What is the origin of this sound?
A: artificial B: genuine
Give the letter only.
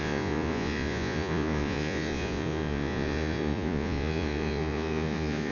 A